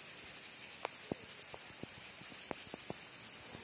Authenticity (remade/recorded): recorded